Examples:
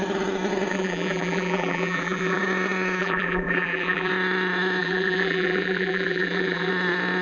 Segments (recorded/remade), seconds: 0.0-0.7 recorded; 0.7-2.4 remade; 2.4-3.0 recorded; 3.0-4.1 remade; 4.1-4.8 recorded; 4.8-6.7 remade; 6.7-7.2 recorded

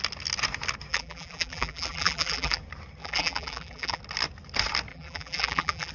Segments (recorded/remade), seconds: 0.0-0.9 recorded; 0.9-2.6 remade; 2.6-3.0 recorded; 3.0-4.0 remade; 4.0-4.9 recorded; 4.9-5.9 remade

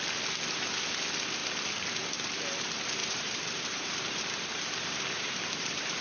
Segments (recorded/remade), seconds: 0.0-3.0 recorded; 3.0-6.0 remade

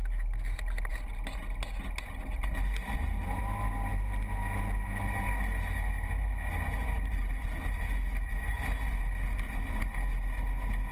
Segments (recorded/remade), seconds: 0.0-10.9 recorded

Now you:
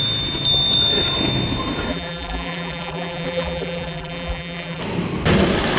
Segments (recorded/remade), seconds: 0.0-1.9 recorded; 1.9-4.8 remade; 4.8-5.8 recorded

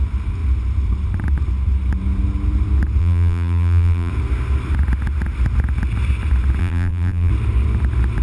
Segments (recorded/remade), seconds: 0.0-3.0 recorded; 3.0-4.1 remade; 4.1-6.6 recorded; 6.6-7.3 remade; 7.3-8.2 recorded

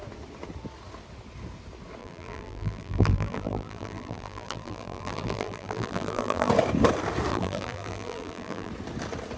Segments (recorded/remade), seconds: 0.0-2.0 recorded; 2.0-6.5 remade; 6.5-7.3 recorded; 7.3-8.7 remade; 8.7-9.4 recorded